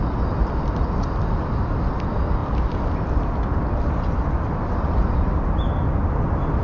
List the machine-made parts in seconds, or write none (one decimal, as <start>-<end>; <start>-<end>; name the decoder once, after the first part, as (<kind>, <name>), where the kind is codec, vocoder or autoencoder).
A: 2.4-3.2 (vocoder, BigVGAN v2)